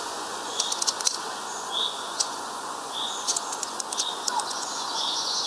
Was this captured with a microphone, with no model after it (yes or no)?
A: no